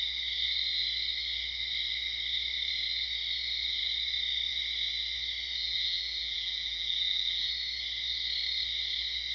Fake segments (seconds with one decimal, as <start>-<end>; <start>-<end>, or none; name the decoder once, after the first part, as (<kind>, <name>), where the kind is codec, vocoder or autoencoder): 5.6-7.5 (vocoder, BigVGAN v2)